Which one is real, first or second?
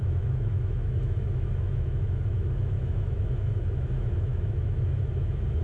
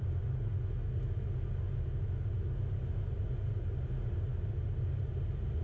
second